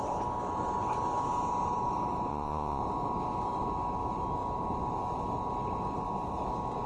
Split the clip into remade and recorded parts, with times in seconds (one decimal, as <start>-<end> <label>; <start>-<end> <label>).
0.0-2.3 recorded; 2.3-2.8 remade; 2.8-6.9 recorded